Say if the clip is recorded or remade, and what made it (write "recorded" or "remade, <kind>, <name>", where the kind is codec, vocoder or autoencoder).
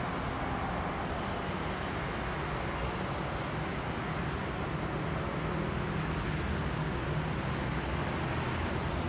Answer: recorded